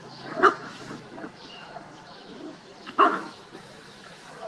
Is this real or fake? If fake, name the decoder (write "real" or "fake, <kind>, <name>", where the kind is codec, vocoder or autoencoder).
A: fake, autoencoder, DAC-VAE